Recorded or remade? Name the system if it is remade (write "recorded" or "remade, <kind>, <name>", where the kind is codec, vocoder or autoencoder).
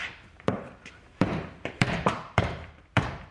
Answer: remade, vocoder, BigVGAN v2